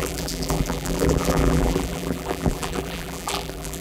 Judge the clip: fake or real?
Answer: fake